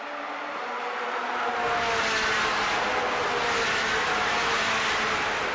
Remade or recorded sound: recorded